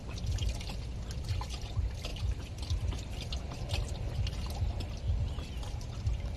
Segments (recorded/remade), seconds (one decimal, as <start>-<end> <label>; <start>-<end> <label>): 0.0-6.4 recorded